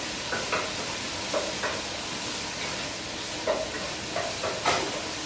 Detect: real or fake real